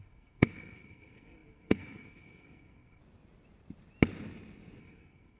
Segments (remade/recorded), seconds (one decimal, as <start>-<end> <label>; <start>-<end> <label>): 0.0-3.0 remade; 3.0-4.8 recorded; 4.8-5.4 remade